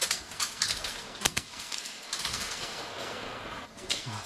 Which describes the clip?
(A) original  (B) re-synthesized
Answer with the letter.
B